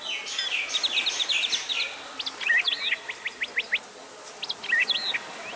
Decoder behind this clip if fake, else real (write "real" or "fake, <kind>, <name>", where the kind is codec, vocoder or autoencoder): real